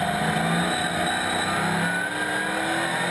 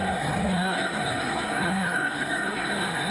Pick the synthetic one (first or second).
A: second